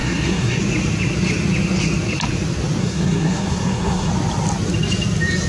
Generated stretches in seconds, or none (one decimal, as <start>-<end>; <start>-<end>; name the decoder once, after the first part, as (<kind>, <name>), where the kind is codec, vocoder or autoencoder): 0.0-0.6 (codec, SNAC); 2.8-4.1